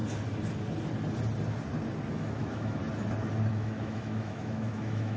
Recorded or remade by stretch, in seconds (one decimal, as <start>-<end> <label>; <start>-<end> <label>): 0.0-2.1 recorded; 2.1-2.8 remade; 2.8-3.5 recorded; 3.5-5.2 remade